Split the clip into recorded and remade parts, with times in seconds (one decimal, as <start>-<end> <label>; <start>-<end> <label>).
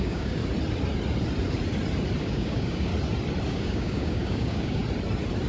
0.0-0.4 remade; 0.4-2.2 recorded; 2.2-2.9 remade; 2.9-3.5 recorded; 3.5-4.8 remade; 4.8-5.5 recorded